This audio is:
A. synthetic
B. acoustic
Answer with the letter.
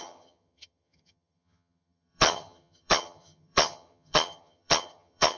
A